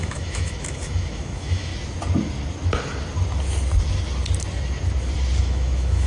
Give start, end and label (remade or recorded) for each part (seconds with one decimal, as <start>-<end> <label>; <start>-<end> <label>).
0.0-1.7 remade; 1.7-5.4 recorded; 5.4-6.1 remade